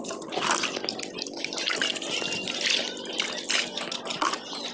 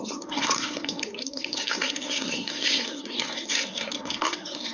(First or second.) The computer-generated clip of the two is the second